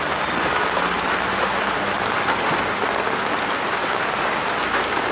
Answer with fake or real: real